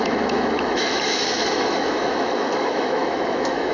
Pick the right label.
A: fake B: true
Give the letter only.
A